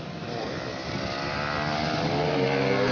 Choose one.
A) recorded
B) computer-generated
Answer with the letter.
A